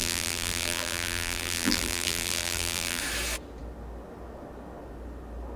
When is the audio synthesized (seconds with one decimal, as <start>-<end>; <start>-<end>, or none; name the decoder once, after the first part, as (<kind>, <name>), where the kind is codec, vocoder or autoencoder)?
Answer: 0.0-3.0 (vocoder, BigVGAN v2)